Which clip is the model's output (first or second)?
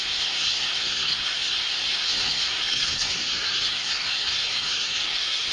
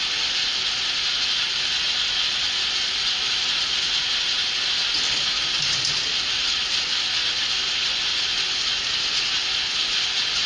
first